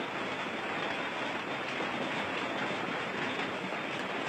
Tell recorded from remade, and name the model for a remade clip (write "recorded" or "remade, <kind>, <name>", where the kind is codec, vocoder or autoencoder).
remade, vocoder, BigVGAN v2